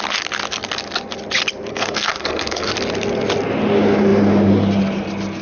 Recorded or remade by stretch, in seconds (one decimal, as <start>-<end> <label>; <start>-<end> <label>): 0.0-1.7 recorded; 1.7-2.7 remade; 2.7-5.4 recorded

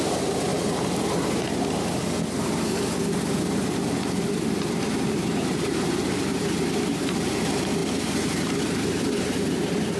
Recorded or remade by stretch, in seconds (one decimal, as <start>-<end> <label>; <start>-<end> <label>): 0.0-0.5 remade; 0.5-3.4 recorded; 3.4-10.0 remade

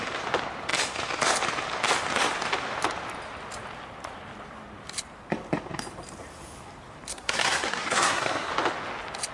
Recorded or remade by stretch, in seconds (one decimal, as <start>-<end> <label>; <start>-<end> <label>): 0.0-7.1 recorded; 7.1-8.5 remade; 8.5-9.3 recorded

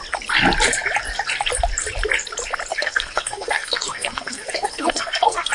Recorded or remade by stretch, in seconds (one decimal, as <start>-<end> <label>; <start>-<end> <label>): 0.0-2.7 recorded; 2.7-5.5 remade

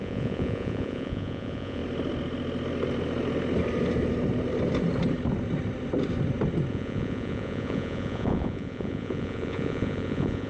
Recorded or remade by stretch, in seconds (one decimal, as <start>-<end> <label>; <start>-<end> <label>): 0.0-1.8 remade; 1.8-6.7 recorded; 6.7-10.5 remade

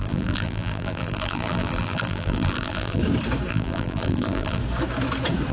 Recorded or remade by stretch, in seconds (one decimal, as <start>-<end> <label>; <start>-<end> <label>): 0.0-3.0 remade; 3.0-3.5 recorded; 3.5-4.6 remade; 4.6-5.5 recorded

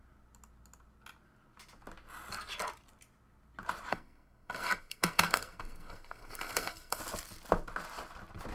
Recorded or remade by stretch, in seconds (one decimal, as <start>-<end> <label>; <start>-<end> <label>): 0.0-3.9 recorded; 3.9-7.0 remade; 7.0-8.5 recorded